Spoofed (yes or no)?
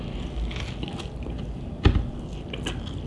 no